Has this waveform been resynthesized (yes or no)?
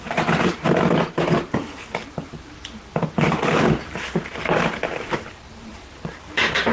yes